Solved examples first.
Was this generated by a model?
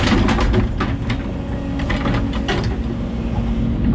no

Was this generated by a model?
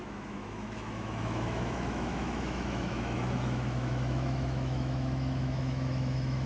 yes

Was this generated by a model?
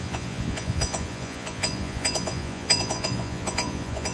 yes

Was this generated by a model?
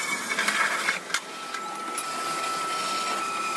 no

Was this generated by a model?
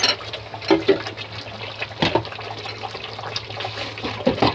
no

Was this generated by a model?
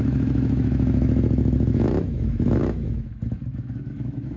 yes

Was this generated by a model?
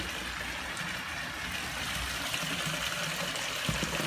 no